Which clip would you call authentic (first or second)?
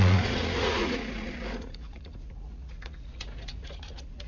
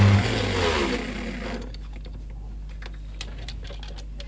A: second